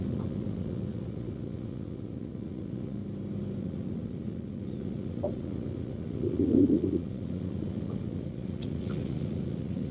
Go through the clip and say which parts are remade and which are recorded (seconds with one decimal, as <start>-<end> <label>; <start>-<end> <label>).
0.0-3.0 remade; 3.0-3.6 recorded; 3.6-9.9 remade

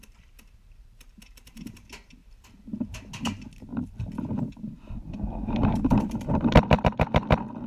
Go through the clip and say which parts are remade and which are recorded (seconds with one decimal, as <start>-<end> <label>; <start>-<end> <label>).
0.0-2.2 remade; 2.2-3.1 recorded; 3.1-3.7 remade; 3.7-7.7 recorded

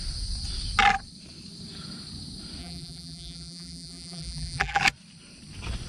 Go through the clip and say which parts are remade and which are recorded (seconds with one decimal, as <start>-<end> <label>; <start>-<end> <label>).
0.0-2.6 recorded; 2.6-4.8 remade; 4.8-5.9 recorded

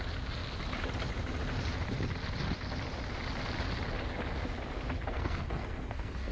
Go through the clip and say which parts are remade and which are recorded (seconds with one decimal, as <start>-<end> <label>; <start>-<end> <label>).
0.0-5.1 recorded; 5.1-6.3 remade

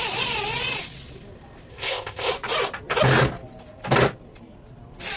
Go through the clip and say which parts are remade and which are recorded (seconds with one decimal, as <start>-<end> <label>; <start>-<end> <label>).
0.0-1.7 recorded; 1.7-2.3 remade; 2.3-5.2 recorded